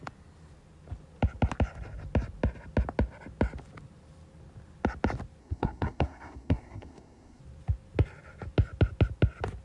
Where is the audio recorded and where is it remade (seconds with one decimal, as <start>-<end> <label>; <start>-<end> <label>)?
0.0-5.4 recorded; 5.4-7.4 remade; 7.4-9.6 recorded